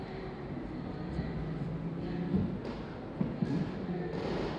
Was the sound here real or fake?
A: real